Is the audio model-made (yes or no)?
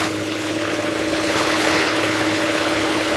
yes